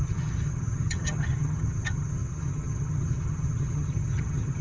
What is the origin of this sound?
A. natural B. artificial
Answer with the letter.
B